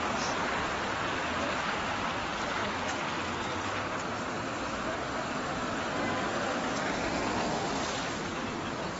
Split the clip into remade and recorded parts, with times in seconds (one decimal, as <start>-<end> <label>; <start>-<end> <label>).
0.0-9.0 recorded